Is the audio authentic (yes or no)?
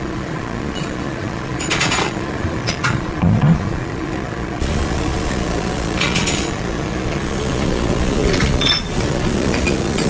no